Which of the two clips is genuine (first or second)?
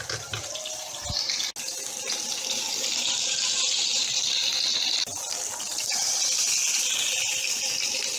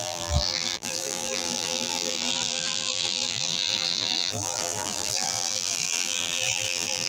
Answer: first